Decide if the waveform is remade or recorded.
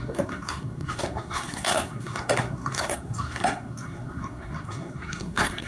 remade